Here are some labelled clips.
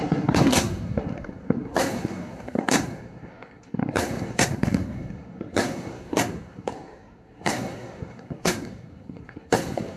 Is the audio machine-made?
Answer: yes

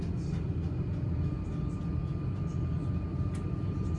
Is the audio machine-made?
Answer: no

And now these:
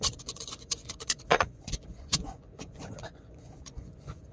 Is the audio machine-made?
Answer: yes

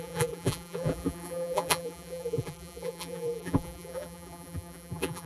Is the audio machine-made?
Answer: yes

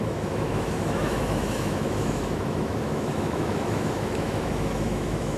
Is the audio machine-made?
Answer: yes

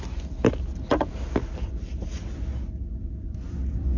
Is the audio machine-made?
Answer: no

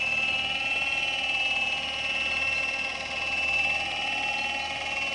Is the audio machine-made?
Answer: no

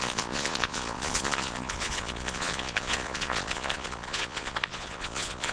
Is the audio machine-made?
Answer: yes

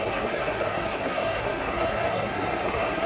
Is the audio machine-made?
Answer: yes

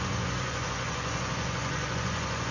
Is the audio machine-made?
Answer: yes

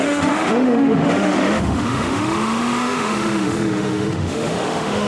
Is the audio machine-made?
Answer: yes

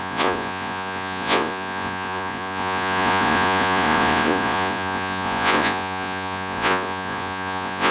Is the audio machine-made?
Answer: yes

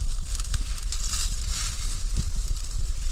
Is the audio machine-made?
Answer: no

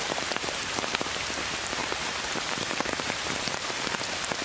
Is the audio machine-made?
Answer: yes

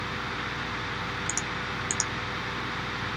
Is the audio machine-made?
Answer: no